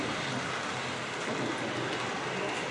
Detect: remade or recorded recorded